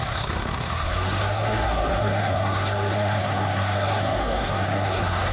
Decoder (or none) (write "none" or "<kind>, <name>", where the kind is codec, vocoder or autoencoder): codec, SNAC